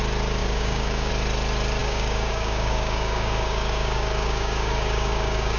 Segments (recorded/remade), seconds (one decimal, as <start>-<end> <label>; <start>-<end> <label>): 0.0-0.4 recorded; 0.4-1.1 remade; 1.1-1.8 recorded; 1.8-5.6 remade